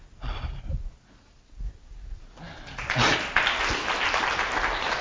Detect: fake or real real